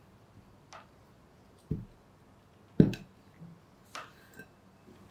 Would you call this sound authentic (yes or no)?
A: yes